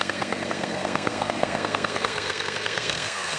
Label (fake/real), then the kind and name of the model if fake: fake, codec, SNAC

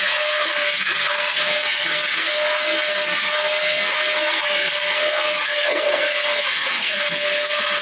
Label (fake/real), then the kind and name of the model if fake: fake, codec, SNAC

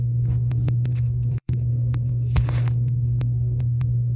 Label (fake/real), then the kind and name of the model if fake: fake, codec, SNAC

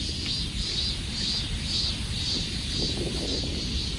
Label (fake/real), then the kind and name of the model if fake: real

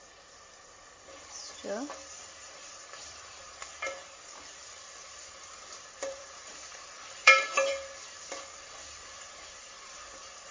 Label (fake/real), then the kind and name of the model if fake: fake, vocoder, BigVGAN v2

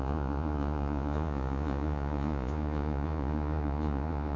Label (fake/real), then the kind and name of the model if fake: fake, vocoder, Vocos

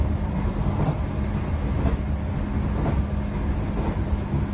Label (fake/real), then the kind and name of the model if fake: real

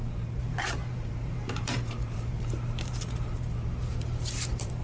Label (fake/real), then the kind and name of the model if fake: fake, vocoder, BigVGAN v2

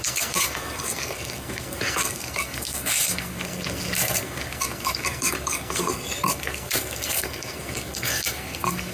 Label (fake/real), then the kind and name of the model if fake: fake, codec, SNAC